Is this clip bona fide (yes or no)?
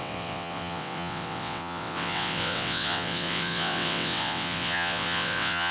no